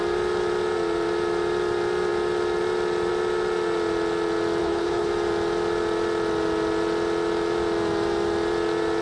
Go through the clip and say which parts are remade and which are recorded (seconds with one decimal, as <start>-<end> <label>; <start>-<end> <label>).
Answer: 0.0-4.6 recorded; 4.6-5.1 remade; 5.1-9.0 recorded

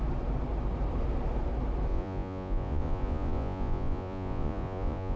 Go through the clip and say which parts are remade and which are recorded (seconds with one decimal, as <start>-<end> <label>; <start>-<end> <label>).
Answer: 0.0-1.9 recorded; 1.9-5.2 remade

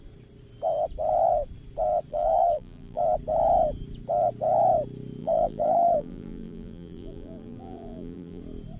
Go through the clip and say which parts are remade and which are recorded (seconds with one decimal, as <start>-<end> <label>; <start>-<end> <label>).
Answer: 0.0-2.1 recorded; 2.1-3.0 remade; 3.0-5.2 recorded; 5.2-8.4 remade; 8.4-8.8 recorded

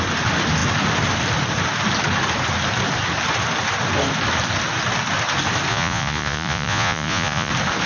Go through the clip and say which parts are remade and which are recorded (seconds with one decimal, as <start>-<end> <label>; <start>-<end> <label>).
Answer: 0.0-5.7 recorded; 5.7-7.5 remade; 7.5-7.9 recorded

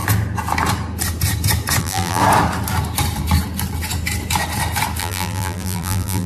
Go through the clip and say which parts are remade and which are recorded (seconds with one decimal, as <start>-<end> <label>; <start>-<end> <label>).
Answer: 0.0-1.8 recorded; 1.8-2.2 remade; 2.2-5.0 recorded; 5.0-6.3 remade

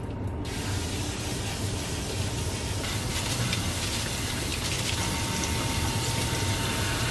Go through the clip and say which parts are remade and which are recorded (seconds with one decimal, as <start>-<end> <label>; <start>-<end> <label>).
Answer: 0.0-7.1 recorded

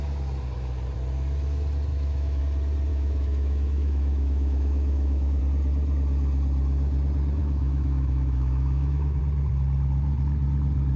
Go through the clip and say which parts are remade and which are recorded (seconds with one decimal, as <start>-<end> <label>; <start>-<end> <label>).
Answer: 0.0-1.9 recorded; 1.9-2.4 remade; 2.4-2.9 recorded; 2.9-5.4 remade; 5.4-7.4 recorded; 7.4-9.2 remade; 9.2-11.0 recorded

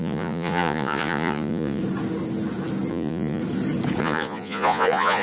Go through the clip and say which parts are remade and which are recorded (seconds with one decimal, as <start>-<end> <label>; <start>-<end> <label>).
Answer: 0.0-1.8 remade; 1.8-2.9 recorded; 2.9-3.4 remade; 3.4-4.0 recorded; 4.0-5.2 remade